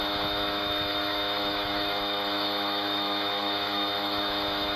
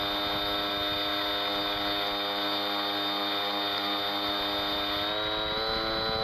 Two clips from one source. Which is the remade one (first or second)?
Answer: first